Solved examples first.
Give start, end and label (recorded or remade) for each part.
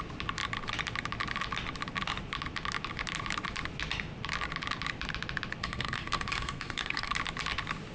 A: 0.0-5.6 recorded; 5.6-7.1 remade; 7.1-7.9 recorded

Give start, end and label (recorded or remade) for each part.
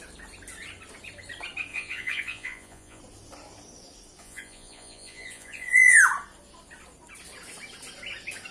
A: 0.0-1.7 recorded; 1.7-3.0 remade; 3.0-4.2 recorded; 4.2-6.0 remade; 6.0-8.5 recorded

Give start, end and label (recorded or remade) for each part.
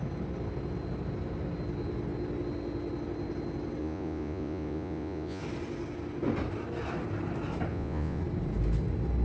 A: 0.0-3.8 recorded; 3.8-5.4 remade; 5.4-7.7 recorded; 7.7-8.2 remade; 8.2-9.2 recorded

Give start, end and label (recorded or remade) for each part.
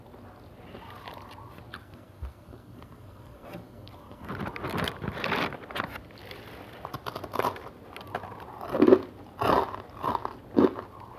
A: 0.0-1.8 recorded; 1.8-4.3 remade; 4.3-11.2 recorded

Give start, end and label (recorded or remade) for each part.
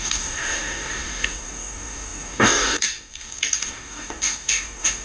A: 0.0-5.0 remade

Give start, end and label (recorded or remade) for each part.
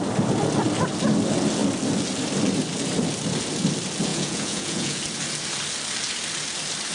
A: 0.0-4.1 recorded; 4.1-5.0 remade; 5.0-6.9 recorded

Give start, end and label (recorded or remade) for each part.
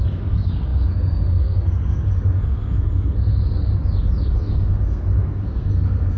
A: 0.0-3.3 remade; 3.3-4.3 recorded; 4.3-6.2 remade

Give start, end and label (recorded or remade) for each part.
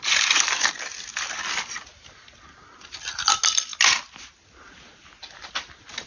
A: 0.0-6.1 recorded